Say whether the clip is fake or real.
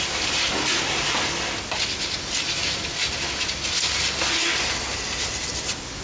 real